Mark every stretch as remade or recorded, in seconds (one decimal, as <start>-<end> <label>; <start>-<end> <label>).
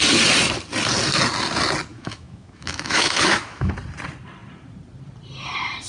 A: 0.0-1.9 recorded; 1.9-3.7 remade; 3.7-5.9 recorded